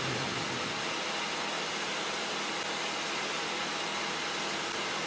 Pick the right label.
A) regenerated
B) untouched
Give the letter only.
B